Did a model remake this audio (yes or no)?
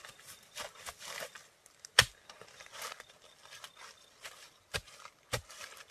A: no